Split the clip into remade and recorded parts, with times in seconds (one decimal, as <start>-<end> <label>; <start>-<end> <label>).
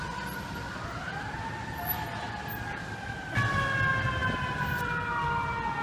0.0-5.8 recorded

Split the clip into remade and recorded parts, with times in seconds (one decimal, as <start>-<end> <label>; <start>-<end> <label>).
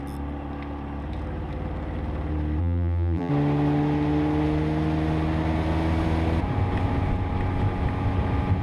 0.0-2.6 recorded; 2.6-3.3 remade; 3.3-8.6 recorded